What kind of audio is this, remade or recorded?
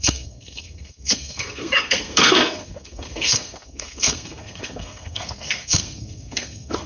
remade